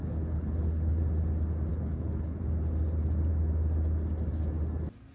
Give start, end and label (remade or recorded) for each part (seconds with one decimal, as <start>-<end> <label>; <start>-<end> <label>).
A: 0.0-1.0 remade; 1.0-1.7 recorded; 1.7-2.4 remade; 2.4-5.1 recorded